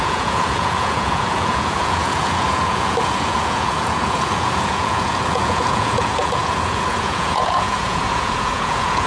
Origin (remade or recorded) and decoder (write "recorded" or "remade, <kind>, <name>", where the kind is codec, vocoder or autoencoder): remade, vocoder, Vocos